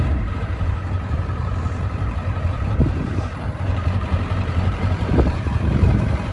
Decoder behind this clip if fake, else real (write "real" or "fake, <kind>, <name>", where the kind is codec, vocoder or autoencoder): fake, vocoder, BigVGAN v2